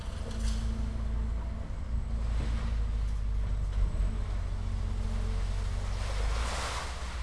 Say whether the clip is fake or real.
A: real